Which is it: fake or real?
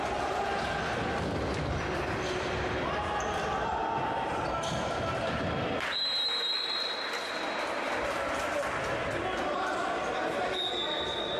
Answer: real